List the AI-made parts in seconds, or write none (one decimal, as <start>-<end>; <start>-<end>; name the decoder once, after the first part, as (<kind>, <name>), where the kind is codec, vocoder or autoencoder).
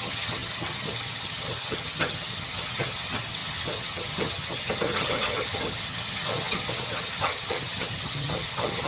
0.0-8.9 (vocoder, HiFi-GAN)